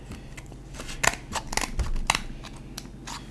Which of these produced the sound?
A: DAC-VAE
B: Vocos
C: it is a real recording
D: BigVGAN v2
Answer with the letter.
C